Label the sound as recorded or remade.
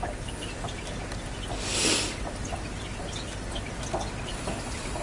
recorded